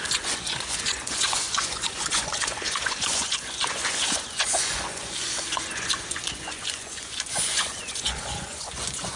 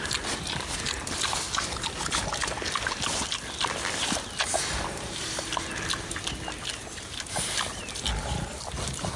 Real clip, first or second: second